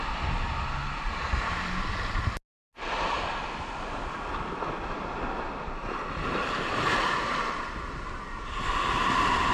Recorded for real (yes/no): yes